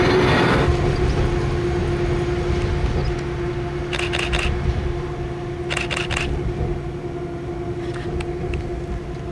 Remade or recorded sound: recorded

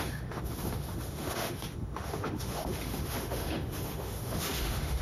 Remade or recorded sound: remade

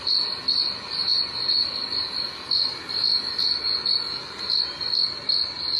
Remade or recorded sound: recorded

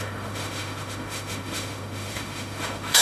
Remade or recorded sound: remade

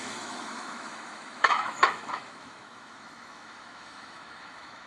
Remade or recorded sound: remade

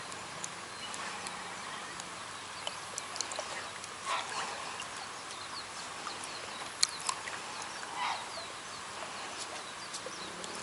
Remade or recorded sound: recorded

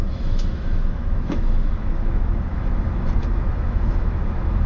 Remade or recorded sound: remade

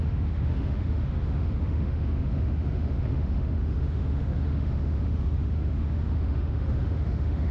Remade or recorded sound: remade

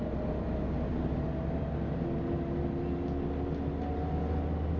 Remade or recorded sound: recorded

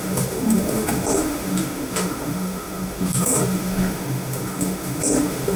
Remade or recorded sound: remade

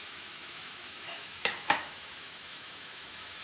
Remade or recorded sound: remade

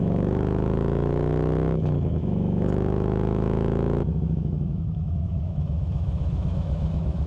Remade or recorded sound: remade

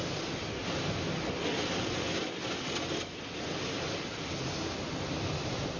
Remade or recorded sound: recorded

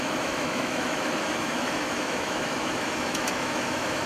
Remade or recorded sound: remade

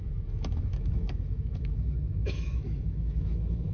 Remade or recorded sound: remade